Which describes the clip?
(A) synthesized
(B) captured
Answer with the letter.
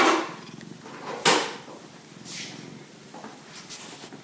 B